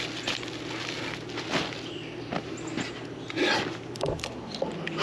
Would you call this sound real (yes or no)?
yes